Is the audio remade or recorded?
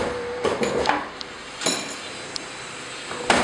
remade